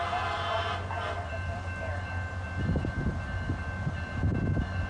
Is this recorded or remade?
recorded